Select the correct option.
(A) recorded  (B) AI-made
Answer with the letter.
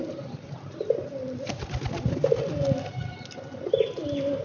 A